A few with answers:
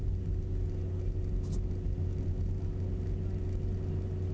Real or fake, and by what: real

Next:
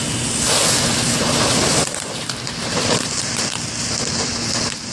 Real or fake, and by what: real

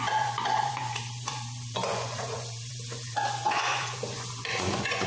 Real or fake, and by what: fake, vocoder, Vocos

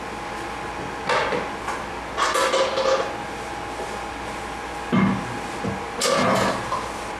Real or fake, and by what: real